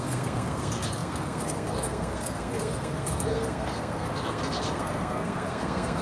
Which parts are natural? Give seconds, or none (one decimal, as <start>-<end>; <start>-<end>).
none